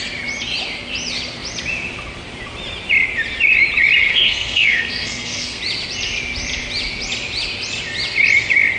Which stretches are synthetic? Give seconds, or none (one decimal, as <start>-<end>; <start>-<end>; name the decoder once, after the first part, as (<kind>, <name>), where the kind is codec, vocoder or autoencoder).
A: 4.1-5.6 (codec, SNAC)